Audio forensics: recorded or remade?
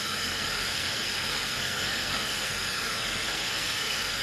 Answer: remade